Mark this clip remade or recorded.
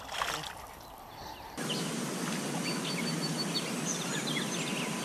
recorded